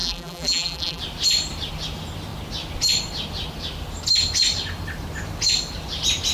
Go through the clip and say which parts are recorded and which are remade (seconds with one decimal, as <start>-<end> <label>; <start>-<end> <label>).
0.0-1.0 remade; 1.0-6.3 recorded